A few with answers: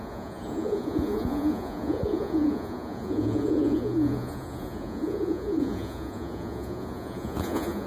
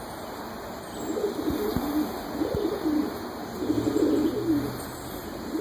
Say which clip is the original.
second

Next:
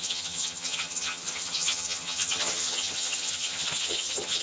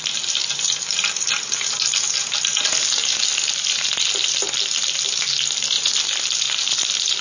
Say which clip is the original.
second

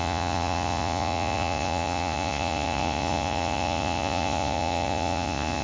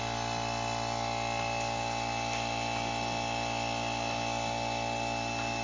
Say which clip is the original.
second